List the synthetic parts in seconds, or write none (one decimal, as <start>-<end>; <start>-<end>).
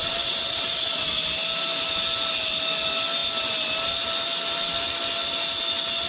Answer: 0.0-1.1